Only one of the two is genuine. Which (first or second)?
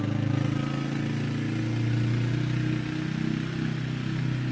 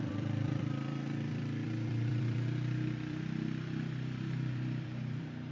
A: first